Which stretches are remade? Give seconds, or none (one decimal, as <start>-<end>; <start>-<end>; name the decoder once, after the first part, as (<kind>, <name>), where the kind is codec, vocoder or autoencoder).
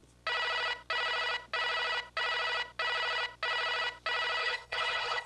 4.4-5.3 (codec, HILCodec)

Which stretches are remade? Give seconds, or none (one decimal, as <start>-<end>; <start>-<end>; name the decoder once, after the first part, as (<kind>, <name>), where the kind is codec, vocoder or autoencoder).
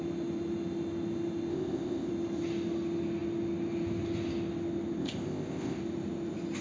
1.5-2.1 (codec, ZipCodec); 5.0-5.8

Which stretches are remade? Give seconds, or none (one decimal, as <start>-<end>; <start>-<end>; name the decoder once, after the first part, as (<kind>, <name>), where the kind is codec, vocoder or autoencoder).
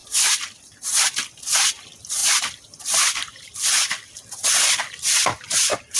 none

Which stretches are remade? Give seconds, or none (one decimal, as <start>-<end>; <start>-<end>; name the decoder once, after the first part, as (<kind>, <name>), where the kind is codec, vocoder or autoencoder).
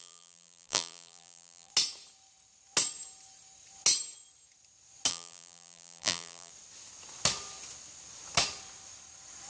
0.0-1.7 (vocoder, BigVGAN v2); 5.1-6.5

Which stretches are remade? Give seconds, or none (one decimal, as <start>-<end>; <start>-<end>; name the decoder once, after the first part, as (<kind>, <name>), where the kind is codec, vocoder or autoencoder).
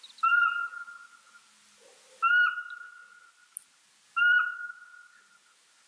none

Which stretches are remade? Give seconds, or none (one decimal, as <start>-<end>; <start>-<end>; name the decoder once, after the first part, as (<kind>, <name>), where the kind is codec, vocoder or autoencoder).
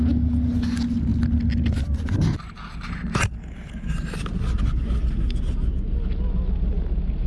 none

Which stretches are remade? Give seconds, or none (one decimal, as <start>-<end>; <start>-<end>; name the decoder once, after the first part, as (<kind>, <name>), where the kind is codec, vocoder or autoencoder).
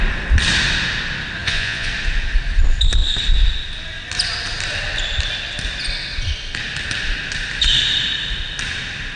1.4-1.9 (vocoder, Vocos)